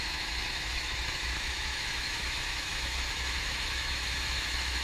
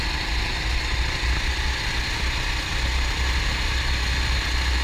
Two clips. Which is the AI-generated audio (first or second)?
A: first